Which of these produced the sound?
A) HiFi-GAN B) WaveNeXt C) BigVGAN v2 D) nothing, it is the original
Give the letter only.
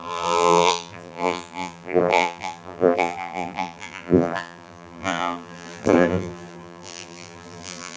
C